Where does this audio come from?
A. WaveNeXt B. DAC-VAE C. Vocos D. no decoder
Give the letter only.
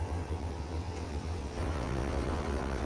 A